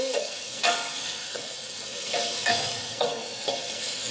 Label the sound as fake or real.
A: fake